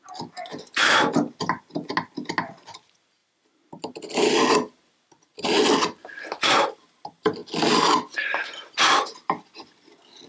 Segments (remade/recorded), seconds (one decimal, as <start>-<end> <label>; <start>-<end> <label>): 0.0-10.3 recorded